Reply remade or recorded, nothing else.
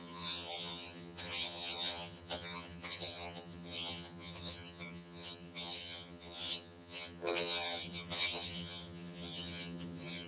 remade